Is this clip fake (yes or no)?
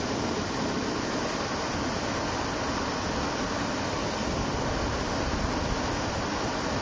no